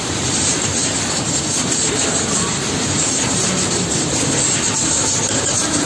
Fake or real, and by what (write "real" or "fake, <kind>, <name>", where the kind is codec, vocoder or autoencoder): fake, vocoder, BigVGAN v2